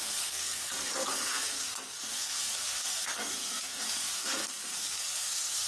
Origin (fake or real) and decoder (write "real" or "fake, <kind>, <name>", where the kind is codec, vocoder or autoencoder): fake, codec, SNAC